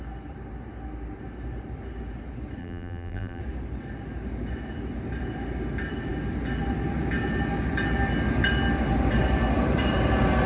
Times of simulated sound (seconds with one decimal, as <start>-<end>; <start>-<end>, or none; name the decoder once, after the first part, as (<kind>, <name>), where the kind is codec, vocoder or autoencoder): 2.6-3.4 (vocoder, BigVGAN v2)